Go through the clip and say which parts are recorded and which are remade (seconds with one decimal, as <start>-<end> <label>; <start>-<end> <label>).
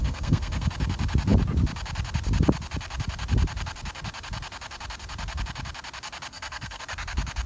0.0-0.7 remade; 0.7-6.3 recorded; 6.3-6.8 remade; 6.8-7.5 recorded